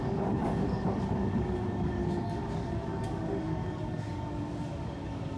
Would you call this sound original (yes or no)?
no